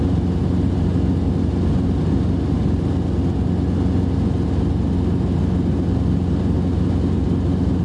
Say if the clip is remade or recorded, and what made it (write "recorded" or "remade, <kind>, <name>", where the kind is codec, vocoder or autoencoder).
recorded